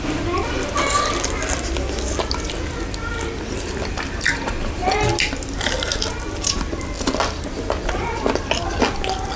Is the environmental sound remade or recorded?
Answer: recorded